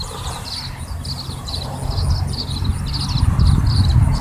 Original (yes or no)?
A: yes